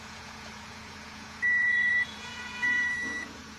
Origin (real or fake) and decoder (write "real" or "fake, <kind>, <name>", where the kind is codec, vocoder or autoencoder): fake, vocoder, Vocos